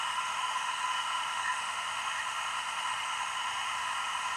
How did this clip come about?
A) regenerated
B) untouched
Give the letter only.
A